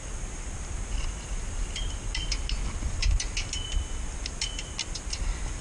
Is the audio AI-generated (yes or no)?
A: no